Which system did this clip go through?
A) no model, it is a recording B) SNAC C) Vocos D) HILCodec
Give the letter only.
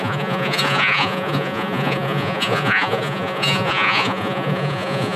C